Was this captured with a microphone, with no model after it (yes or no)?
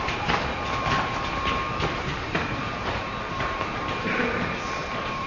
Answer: no